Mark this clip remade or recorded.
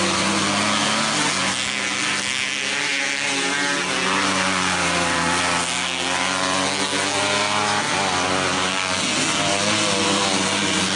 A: recorded